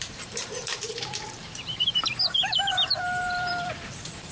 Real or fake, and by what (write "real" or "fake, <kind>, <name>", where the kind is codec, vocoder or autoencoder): fake, vocoder, BigVGAN v2